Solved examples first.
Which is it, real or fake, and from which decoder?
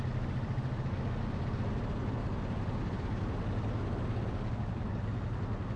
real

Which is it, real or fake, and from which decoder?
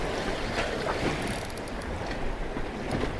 real